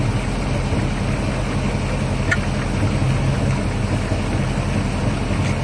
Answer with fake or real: real